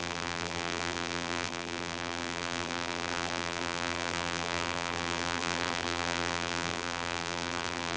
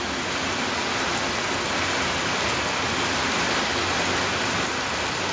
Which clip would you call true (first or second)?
second